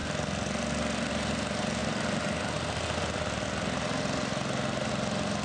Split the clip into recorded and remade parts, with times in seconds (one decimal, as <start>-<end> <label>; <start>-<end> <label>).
0.0-5.4 recorded